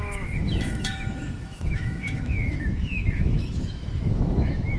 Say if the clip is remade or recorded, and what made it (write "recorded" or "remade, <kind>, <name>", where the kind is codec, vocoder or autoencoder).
remade, autoencoder, DAC-VAE